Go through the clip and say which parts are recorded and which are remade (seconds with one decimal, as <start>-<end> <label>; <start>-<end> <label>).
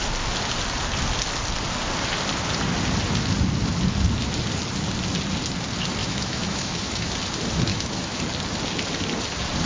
0.0-6.0 recorded; 6.0-7.1 remade; 7.1-7.7 recorded; 7.7-8.2 remade; 8.2-9.7 recorded